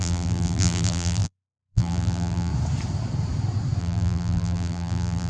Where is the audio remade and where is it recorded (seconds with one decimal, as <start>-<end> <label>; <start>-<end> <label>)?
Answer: 0.0-2.5 remade; 2.5-3.8 recorded; 3.8-5.3 remade